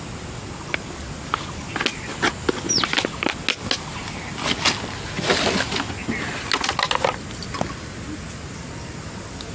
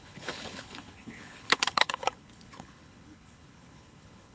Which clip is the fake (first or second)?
second